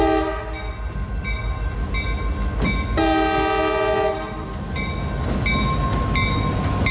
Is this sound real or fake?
real